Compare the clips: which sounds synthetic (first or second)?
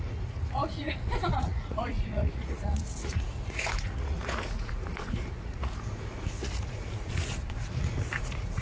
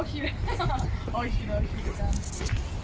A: first